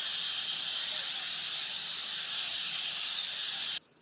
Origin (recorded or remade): recorded